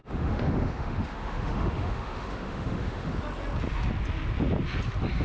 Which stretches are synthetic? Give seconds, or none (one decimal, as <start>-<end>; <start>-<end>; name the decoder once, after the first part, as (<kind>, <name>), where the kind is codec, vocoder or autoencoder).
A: 0.0-3.1 (autoencoder, DAC-VAE)